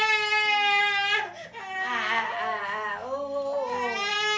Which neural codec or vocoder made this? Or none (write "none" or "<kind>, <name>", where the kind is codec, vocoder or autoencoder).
none